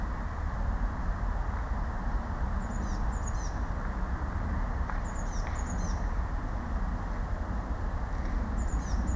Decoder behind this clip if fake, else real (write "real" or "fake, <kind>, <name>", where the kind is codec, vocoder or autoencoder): real